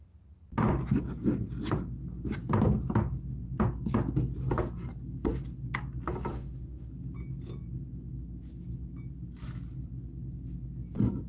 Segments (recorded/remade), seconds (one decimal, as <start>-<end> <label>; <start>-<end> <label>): 0.0-6.3 recorded; 6.3-6.9 remade; 6.9-11.3 recorded